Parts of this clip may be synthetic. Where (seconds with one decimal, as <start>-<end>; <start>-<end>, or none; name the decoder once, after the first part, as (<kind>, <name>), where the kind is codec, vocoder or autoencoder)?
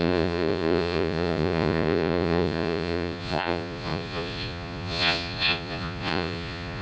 0.0-6.8 (vocoder, Vocos)